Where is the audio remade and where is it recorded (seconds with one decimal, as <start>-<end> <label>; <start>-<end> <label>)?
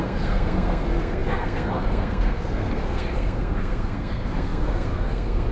0.0-5.5 remade